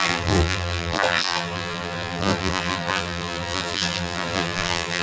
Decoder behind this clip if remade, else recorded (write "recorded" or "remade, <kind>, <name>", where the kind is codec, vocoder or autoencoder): remade, vocoder, BigVGAN v2